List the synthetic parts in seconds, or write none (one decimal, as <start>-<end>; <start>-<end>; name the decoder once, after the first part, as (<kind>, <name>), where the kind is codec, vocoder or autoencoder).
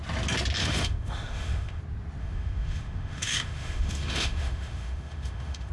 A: 0.6-1.8 (autoencoder, DAC-VAE); 2.2-5.7